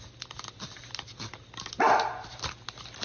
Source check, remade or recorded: recorded